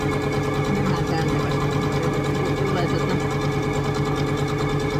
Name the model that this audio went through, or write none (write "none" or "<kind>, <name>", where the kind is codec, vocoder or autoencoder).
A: none